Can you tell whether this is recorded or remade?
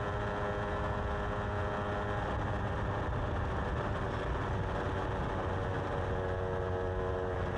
recorded